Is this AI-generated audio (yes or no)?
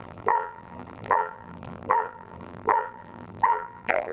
yes